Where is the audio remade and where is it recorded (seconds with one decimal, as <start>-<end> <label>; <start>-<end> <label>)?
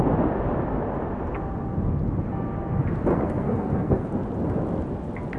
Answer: 0.0-3.1 recorded; 3.1-4.1 remade; 4.1-5.4 recorded